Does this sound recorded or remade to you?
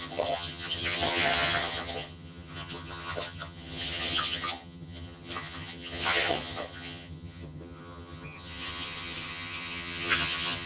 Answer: remade